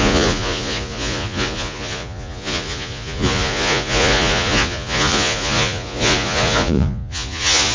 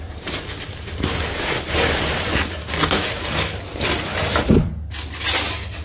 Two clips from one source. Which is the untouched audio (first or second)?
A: second